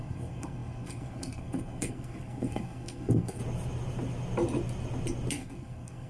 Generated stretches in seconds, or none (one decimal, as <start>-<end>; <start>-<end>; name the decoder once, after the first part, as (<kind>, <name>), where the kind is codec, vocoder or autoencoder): 0.0-3.4 (codec, SNAC); 5.3-6.1